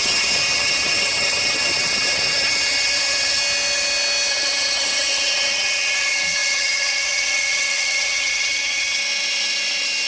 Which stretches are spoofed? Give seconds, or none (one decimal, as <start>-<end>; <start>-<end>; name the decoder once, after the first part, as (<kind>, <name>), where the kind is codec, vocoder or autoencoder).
0.0-3.4 (vocoder, HiFi-GAN); 4.3-9.0